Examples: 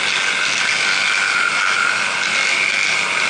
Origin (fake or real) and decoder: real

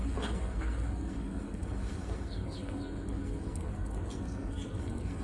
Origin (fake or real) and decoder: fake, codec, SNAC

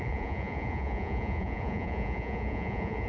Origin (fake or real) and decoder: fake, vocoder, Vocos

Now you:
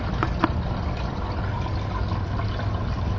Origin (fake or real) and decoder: real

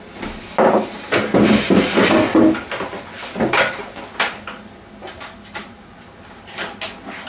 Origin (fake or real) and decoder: real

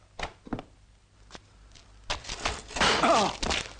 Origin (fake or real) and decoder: real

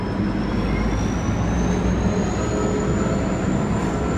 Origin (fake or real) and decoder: real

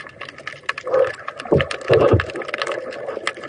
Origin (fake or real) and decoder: real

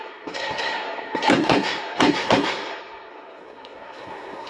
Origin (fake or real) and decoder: fake, codec, SNAC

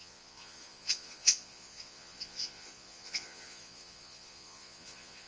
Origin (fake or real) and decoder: fake, vocoder, Vocos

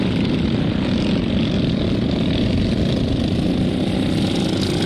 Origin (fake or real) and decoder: real